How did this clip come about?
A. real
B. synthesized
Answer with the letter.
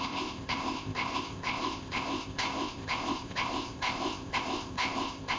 B